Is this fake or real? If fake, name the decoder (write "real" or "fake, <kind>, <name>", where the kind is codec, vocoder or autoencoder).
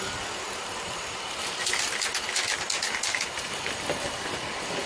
real